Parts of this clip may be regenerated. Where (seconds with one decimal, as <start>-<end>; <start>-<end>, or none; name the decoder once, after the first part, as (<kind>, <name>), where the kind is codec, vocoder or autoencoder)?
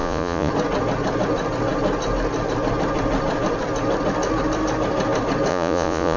0.0-0.5 (vocoder, Vocos); 5.5-6.2